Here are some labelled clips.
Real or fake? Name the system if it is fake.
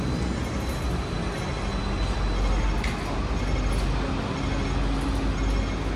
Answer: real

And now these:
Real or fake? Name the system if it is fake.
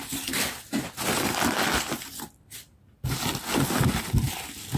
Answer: real